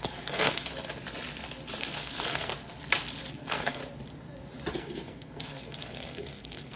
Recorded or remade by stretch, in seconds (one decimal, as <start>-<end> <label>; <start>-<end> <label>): 0.0-0.7 remade; 0.7-1.8 recorded; 1.8-2.5 remade; 2.5-3.3 recorded; 3.3-3.8 remade; 3.8-4.7 recorded; 4.7-6.8 remade

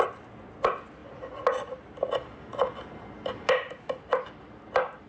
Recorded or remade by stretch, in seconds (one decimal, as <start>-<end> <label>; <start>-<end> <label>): 0.0-5.1 recorded

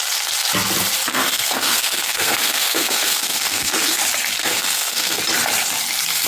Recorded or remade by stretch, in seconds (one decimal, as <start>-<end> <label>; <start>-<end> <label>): 0.0-1.1 recorded; 1.1-4.0 remade; 4.0-4.4 recorded; 4.4-5.2 remade; 5.2-6.3 recorded

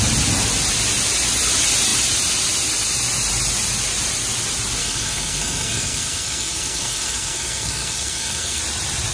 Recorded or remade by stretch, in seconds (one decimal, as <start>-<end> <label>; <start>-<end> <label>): 0.0-4.8 recorded; 4.8-8.6 remade; 8.6-9.1 recorded

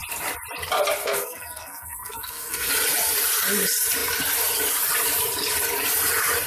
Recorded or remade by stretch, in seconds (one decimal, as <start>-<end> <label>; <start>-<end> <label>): 0.0-1.0 recorded; 1.0-2.7 remade; 2.7-6.5 recorded

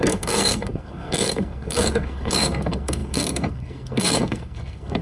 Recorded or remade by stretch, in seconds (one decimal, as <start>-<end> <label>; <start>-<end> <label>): 0.0-5.0 remade

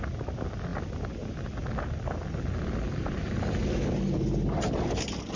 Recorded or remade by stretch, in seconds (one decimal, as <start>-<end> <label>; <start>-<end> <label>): 0.0-5.4 recorded

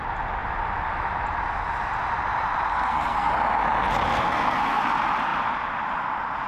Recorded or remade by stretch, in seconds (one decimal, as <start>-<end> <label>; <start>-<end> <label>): 0.0-2.7 recorded; 2.7-3.3 remade; 3.3-4.1 recorded; 4.1-4.8 remade; 4.8-6.5 recorded